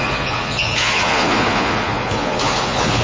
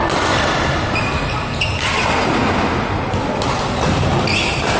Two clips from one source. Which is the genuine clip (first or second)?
second